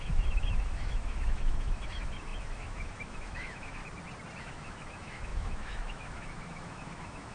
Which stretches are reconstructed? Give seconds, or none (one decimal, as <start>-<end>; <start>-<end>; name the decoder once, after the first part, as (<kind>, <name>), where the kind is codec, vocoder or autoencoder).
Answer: 0.0-3.8 (autoencoder, DAC-VAE); 4.4-7.3